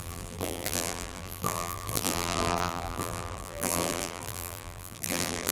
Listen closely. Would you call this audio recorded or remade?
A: remade